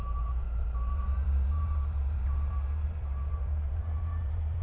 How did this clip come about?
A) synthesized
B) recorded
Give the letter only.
A